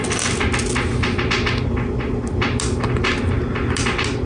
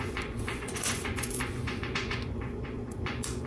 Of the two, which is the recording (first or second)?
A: first